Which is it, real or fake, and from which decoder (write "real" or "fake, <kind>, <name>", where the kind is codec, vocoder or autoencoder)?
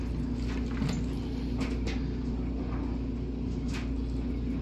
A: real